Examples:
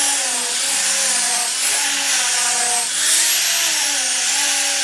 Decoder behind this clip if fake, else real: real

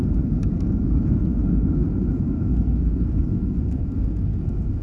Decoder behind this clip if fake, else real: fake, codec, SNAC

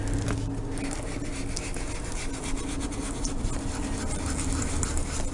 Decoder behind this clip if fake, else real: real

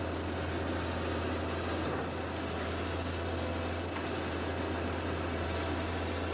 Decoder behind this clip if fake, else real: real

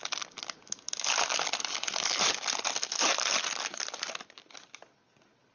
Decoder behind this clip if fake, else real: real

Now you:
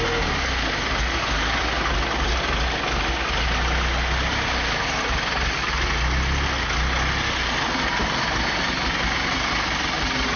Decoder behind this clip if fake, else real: real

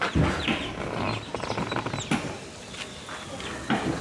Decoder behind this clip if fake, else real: real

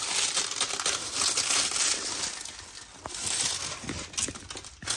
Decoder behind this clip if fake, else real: real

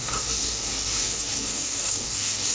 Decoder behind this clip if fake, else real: fake, codec, DAC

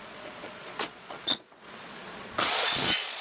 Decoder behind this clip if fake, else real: fake, vocoder, Vocos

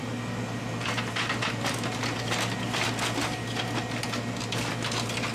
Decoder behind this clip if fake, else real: real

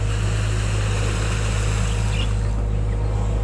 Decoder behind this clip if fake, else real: real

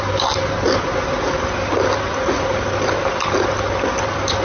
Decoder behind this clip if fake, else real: real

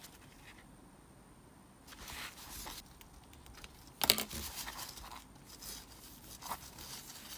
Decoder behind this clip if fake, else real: real